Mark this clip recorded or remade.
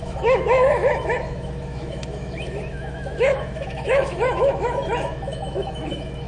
remade